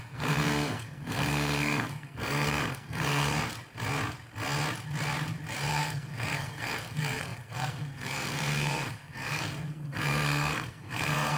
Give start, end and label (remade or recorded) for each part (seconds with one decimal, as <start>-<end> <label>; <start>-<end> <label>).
0.0-3.5 remade; 3.5-5.7 recorded; 5.7-11.4 remade

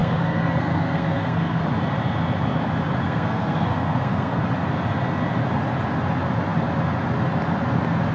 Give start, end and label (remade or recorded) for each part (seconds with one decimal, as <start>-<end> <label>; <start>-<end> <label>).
0.0-1.6 remade; 1.6-3.0 recorded; 3.0-4.4 remade; 4.4-8.1 recorded

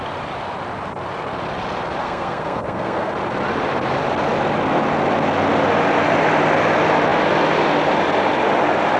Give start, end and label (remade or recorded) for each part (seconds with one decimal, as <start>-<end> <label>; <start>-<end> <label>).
0.0-2.0 recorded; 2.0-3.1 remade; 3.1-9.0 recorded